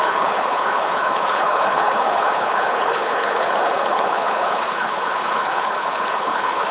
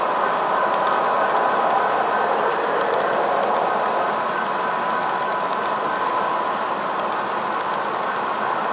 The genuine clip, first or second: second